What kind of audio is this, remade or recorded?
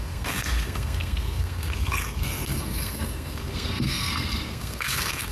remade